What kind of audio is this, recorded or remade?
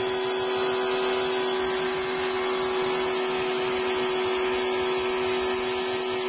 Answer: recorded